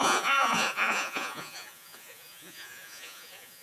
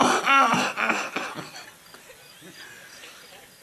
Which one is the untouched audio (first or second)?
second